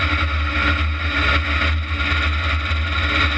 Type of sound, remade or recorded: recorded